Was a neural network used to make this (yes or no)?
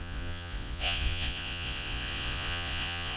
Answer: yes